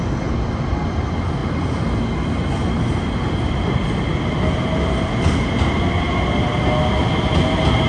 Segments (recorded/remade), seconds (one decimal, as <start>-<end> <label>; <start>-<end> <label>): 0.0-7.9 recorded